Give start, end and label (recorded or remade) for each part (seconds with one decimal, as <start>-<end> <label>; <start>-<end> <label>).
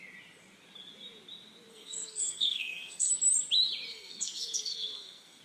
0.0-1.7 recorded; 1.7-3.1 remade; 3.1-3.9 recorded; 3.9-5.4 remade